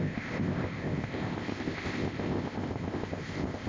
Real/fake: fake